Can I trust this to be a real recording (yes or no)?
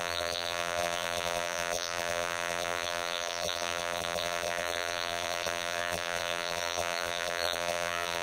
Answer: no